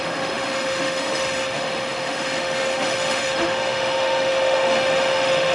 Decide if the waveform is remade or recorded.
remade